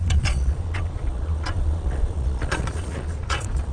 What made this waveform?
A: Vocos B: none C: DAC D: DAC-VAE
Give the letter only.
A